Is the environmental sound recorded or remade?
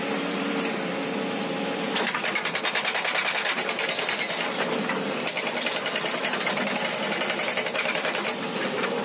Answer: remade